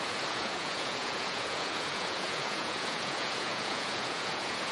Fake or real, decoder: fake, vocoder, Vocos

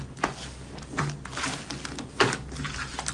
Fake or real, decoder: real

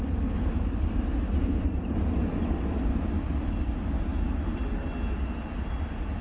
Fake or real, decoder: real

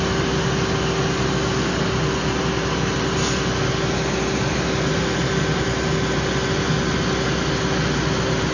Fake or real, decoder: real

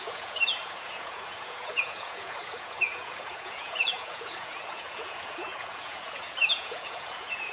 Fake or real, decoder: fake, vocoder, Vocos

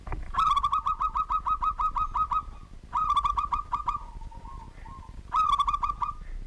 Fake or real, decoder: real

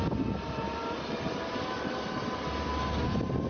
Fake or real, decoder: real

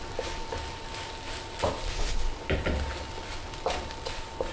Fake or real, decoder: real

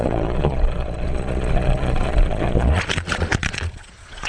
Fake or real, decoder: fake, vocoder, Vocos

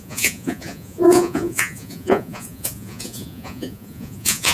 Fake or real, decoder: fake, vocoder, Vocos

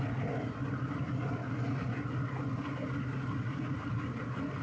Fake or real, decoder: real